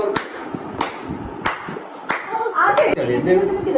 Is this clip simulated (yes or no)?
no